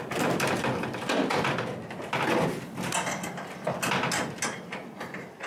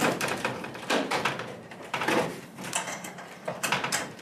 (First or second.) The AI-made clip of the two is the second